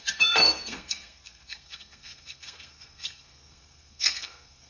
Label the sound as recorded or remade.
remade